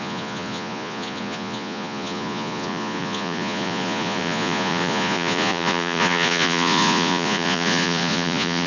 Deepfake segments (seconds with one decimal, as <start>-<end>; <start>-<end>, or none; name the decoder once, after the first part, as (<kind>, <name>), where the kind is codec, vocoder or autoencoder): 0.0-8.7 (vocoder, Vocos)